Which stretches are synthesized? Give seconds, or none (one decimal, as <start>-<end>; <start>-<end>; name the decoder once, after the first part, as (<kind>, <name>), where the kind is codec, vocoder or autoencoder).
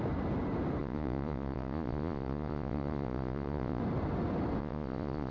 0.8-3.8 (vocoder, Vocos); 4.6-5.3